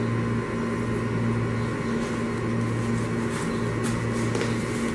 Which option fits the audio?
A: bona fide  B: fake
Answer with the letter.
A